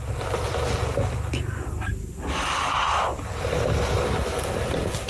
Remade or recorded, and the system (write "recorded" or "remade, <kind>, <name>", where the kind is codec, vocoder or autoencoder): recorded